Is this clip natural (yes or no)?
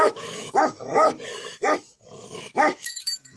no